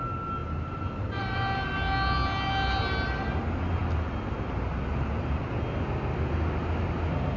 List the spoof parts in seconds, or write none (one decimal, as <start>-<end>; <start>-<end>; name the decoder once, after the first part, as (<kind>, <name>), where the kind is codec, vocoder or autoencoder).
none

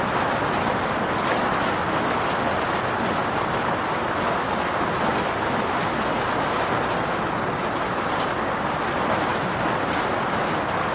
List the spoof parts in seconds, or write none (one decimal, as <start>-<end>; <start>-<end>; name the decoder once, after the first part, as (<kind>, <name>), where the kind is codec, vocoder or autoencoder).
5.1-5.8 (vocoder, BigVGAN v2)